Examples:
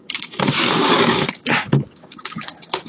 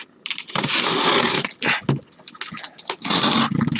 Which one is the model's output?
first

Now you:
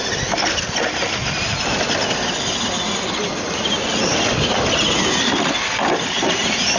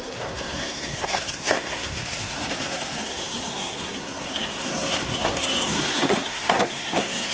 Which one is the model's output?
second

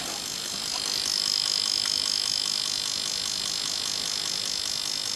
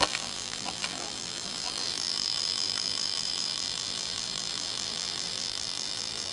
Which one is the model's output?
second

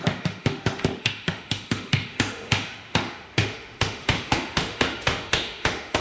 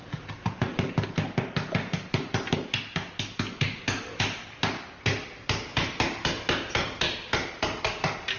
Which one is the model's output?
first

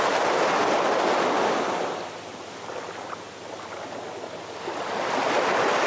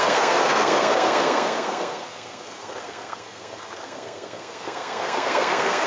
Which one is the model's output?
second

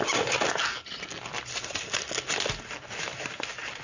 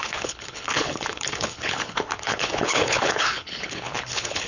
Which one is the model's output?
second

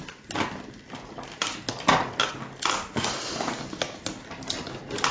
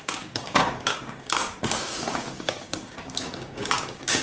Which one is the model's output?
second